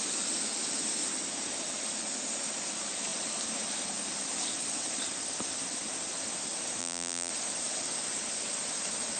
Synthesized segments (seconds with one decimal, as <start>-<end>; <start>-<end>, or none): 6.8-7.3